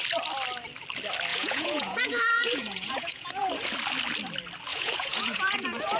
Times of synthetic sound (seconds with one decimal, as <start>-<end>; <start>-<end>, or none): 1.3-3.5; 4.7-6.0